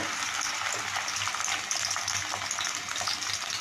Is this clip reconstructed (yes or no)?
no